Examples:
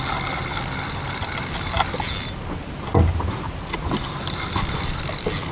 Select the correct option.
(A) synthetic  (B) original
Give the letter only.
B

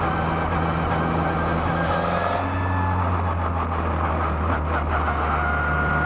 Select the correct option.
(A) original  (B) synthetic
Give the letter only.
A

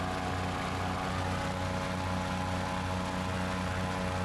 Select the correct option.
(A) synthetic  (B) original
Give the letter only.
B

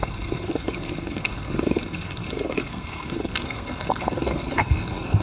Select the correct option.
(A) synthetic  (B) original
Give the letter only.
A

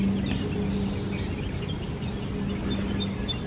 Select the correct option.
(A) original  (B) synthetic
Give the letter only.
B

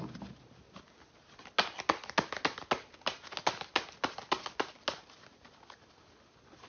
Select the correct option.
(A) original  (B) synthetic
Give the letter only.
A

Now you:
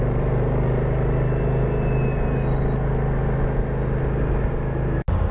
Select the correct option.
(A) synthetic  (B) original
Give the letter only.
B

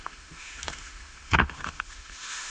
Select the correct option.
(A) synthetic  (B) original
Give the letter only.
A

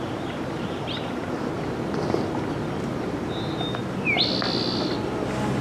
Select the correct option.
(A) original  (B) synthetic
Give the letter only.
A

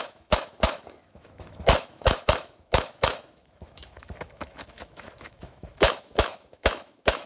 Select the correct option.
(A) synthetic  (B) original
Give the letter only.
A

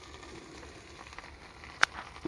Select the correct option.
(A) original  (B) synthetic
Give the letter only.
B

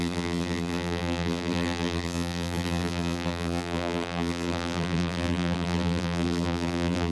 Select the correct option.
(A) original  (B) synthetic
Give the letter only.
B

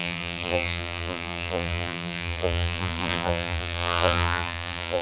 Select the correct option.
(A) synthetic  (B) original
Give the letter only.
A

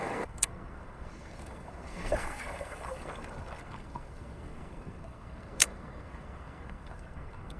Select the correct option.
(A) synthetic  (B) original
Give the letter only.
A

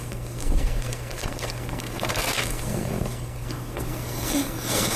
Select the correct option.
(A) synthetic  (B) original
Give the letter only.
A